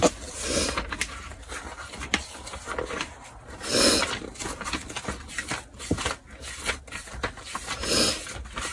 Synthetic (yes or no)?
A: no